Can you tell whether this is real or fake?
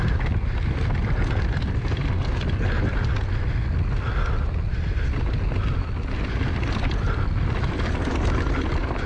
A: real